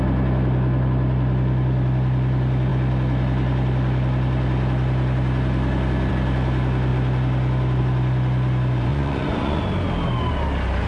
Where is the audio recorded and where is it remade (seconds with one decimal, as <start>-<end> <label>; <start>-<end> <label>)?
0.0-8.9 recorded; 8.9-9.6 remade; 9.6-10.9 recorded